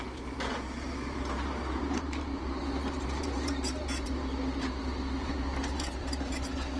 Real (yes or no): no